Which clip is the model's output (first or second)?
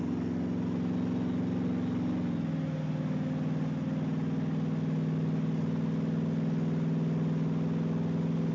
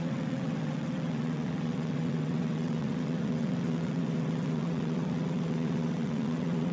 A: second